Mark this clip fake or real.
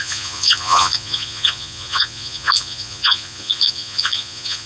fake